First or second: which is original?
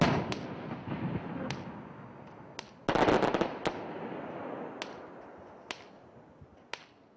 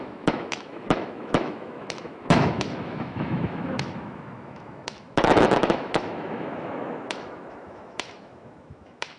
first